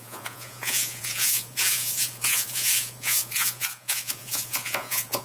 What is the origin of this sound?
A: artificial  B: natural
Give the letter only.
A